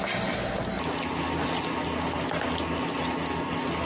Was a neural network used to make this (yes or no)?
no